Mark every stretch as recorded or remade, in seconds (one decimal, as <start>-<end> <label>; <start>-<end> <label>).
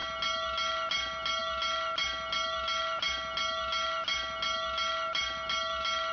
0.0-6.1 recorded